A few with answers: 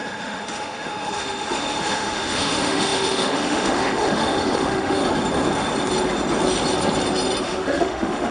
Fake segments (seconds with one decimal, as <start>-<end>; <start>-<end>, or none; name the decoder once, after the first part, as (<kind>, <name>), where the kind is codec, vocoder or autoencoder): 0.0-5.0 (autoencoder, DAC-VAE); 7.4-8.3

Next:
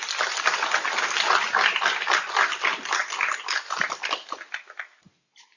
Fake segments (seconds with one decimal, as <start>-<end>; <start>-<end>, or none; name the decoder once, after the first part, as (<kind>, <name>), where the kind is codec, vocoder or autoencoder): none

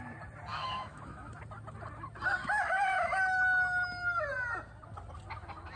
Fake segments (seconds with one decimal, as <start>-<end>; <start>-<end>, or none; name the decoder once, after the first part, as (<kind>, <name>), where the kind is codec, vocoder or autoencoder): 0.5-1.3 (autoencoder, DAC-VAE); 2.4-3.1

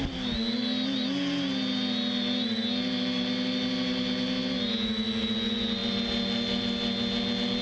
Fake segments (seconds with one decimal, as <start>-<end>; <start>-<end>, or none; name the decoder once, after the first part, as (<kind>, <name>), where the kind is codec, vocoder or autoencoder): none

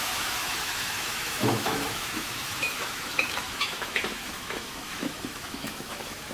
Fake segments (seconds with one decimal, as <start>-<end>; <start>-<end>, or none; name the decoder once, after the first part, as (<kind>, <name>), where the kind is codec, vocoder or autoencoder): 0.0-6.3 (autoencoder, DAC-VAE)